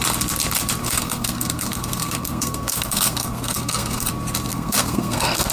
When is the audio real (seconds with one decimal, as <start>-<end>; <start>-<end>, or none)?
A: 0.0-0.8; 4.1-4.5